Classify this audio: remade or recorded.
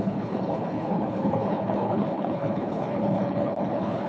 remade